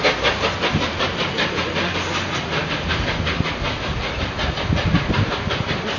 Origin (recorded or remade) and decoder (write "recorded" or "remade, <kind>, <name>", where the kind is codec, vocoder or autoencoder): recorded